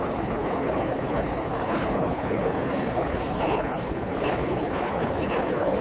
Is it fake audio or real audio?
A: fake